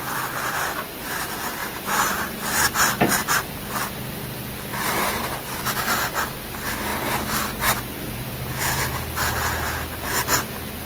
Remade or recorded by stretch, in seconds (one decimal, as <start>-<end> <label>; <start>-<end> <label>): 0.0-1.6 recorded; 1.6-3.4 remade; 3.4-4.7 recorded; 4.7-5.6 remade; 5.6-10.8 recorded